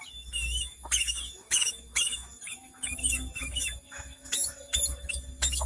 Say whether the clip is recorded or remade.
remade